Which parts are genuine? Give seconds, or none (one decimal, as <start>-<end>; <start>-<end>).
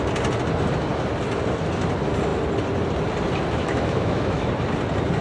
0.0-3.6; 4.5-5.2